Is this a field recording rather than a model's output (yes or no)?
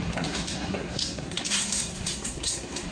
no